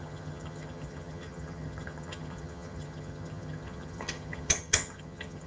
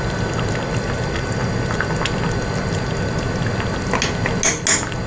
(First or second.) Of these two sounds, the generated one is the first